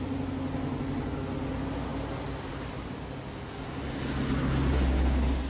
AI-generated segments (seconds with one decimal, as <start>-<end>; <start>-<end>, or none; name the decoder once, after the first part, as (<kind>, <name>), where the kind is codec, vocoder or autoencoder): none